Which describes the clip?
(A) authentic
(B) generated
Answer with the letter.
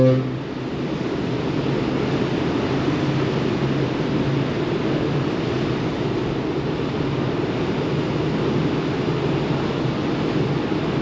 A